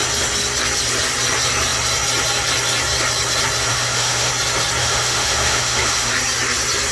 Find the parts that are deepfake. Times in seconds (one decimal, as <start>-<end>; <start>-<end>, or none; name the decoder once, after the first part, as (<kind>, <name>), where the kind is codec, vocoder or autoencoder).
3.7-4.3 (autoencoder, DAC-VAE); 4.8-6.1